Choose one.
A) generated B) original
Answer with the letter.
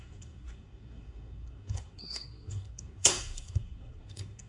A